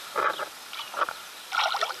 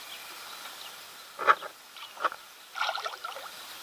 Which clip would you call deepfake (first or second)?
second